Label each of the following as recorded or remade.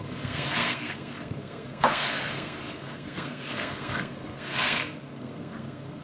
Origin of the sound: remade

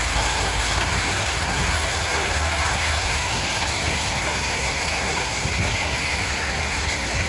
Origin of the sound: remade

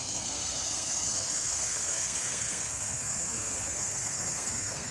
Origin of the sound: remade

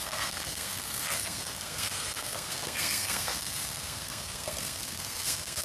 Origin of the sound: remade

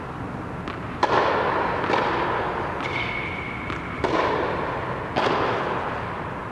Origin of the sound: recorded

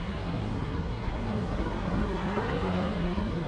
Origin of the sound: remade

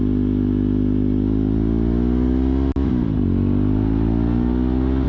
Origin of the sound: recorded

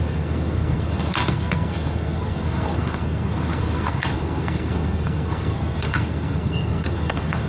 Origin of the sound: remade